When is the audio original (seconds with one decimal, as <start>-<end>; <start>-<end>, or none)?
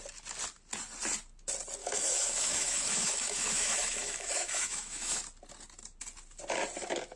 0.0-1.8; 5.2-7.2